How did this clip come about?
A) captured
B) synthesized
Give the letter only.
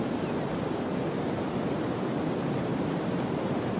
A